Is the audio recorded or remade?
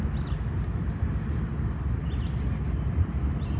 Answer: recorded